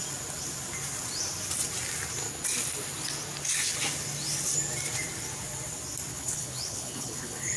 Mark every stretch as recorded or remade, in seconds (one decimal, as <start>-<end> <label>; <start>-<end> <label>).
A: 0.0-6.1 recorded; 6.1-7.6 remade